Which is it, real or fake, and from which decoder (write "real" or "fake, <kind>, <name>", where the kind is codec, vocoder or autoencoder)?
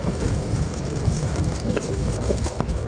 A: fake, codec, DAC